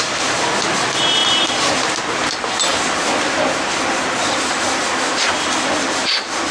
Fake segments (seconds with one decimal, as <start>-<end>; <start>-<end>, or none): none